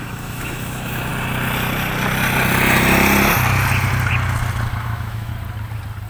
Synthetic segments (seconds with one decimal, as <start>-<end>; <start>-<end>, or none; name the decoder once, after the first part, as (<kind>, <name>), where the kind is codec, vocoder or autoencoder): 0.0-1.1 (autoencoder, DAC-VAE); 4.8-5.3

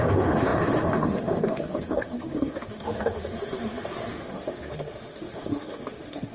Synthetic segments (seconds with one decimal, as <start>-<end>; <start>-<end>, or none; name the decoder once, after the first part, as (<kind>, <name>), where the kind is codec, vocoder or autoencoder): 0.0-6.3 (autoencoder, DAC-VAE)

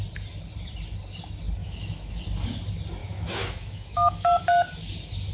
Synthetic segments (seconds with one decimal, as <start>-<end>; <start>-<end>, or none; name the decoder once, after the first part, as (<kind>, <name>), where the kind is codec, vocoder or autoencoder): 1.6-2.2 (autoencoder, DAC-VAE); 3.0-4.4

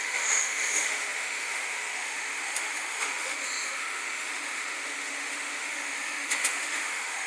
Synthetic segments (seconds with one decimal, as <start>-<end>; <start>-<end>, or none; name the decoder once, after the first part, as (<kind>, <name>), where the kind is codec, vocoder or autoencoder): 0.0-7.3 (autoencoder, DAC-VAE)

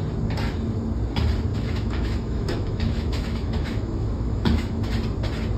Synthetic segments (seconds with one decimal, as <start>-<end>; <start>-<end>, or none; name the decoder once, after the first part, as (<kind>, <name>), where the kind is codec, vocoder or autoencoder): 1.5-4.9 (autoencoder, DAC-VAE)

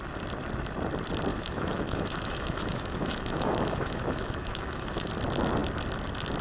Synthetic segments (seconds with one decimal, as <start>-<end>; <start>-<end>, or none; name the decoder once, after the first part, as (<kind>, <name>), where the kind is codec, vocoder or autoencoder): 1.3-5.1 (autoencoder, DAC-VAE)